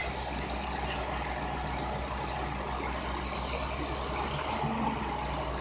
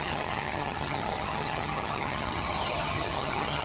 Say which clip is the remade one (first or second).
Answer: second